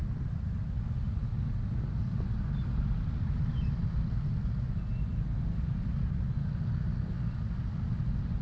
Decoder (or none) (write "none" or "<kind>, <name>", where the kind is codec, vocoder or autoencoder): none